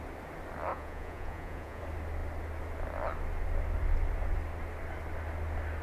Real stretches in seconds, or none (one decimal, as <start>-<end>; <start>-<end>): 0.0-0.7; 1.8-5.8